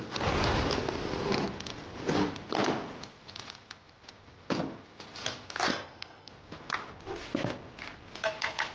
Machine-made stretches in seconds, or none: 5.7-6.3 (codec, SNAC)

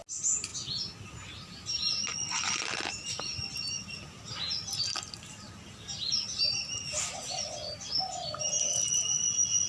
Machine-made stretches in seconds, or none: none

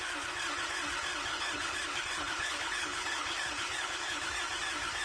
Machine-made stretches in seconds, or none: 1.3-4.3 (codec, HILCodec)